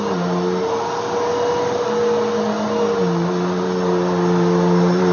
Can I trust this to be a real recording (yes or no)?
yes